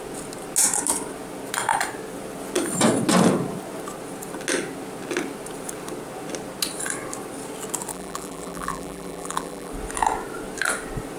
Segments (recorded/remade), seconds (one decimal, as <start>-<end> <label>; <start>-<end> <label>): 0.0-7.9 recorded; 7.9-9.7 remade; 9.7-11.2 recorded